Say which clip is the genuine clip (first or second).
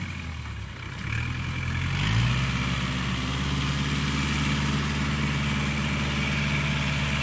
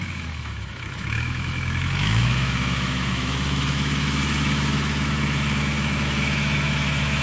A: first